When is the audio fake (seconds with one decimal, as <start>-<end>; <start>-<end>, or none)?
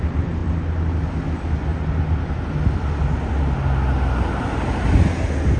none